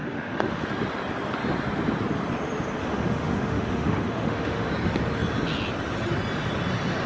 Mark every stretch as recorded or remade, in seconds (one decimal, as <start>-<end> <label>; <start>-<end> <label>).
0.0-0.7 remade; 0.7-2.8 recorded; 2.8-4.7 remade; 4.7-7.1 recorded